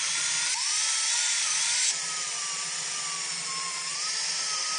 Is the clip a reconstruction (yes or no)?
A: no